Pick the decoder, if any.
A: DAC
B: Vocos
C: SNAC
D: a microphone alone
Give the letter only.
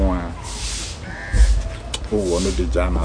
D